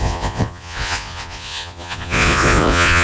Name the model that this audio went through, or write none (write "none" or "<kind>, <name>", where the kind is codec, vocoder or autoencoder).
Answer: vocoder, Vocos